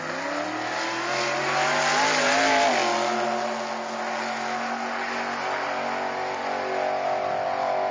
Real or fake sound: real